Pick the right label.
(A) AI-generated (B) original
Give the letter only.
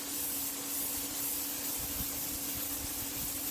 B